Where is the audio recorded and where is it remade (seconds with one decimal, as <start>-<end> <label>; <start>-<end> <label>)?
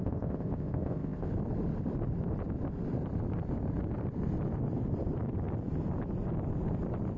0.0-1.3 remade; 1.3-7.2 recorded